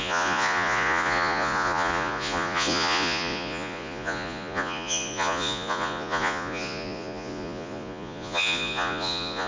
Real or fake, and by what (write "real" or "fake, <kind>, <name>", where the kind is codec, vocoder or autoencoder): fake, vocoder, Vocos